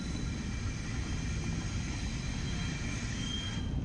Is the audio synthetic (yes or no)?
no